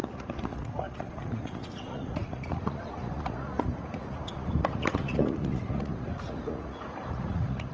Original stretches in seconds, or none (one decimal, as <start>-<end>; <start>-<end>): none